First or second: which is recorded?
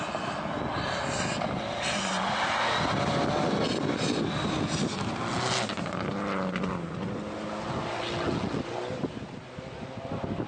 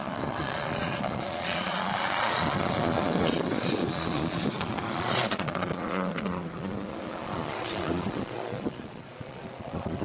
first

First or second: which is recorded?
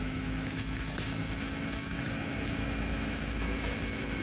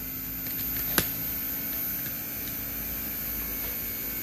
second